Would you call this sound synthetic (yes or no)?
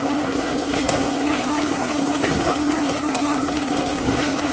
yes